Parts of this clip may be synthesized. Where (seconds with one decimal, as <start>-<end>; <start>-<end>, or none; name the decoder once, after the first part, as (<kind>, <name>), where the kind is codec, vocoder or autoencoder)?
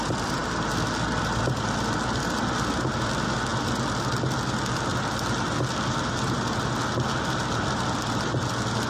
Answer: none